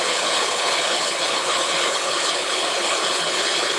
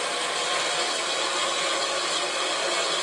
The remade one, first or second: first